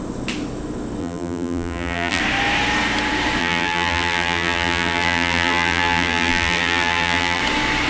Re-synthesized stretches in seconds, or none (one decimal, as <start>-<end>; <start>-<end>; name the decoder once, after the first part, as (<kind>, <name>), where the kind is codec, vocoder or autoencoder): 1.0-2.2 (vocoder, BigVGAN v2); 3.4-7.4